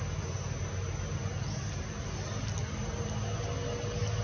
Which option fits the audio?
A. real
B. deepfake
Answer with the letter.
A